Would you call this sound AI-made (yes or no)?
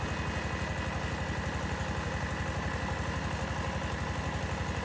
no